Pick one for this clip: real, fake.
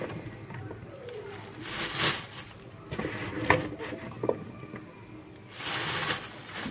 real